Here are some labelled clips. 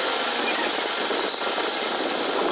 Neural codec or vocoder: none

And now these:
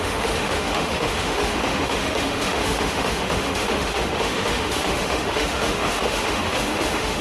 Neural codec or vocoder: autoencoder, DAC-VAE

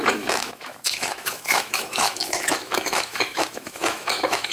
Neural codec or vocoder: autoencoder, DAC-VAE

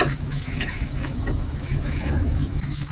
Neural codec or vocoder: autoencoder, DAC-VAE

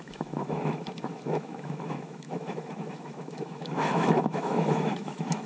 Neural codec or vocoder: autoencoder, DAC-VAE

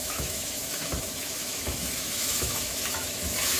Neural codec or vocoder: autoencoder, DAC-VAE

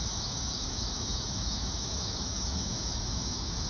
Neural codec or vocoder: autoencoder, DAC-VAE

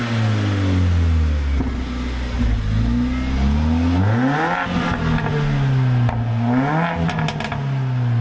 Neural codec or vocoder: none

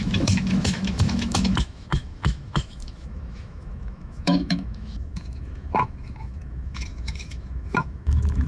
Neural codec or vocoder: autoencoder, DAC-VAE